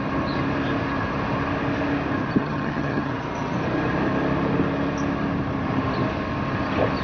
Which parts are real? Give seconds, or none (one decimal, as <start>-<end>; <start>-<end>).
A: 0.0-2.4; 3.1-7.0

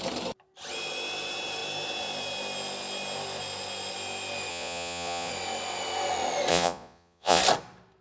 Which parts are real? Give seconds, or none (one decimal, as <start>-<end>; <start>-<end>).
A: 0.0-4.5; 5.3-6.5; 7.4-8.0

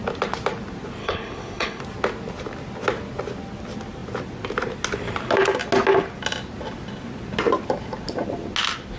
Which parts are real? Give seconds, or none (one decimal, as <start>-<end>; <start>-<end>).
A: 0.0-1.0; 1.8-9.0

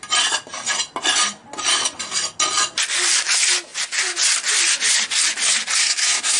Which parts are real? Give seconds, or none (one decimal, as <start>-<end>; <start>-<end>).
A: 0.0-5.8

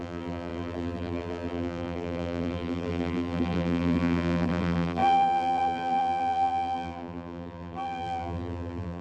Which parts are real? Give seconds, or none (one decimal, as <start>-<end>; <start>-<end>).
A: none

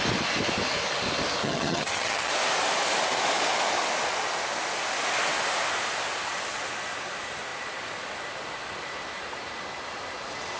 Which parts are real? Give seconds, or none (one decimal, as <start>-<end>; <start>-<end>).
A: 0.0-1.4; 2.3-10.6